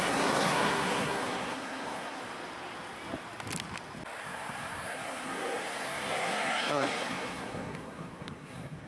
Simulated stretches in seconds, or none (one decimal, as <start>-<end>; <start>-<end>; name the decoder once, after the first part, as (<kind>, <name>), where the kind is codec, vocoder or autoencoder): 0.0-2.2 (codec, SNAC); 4.2-8.9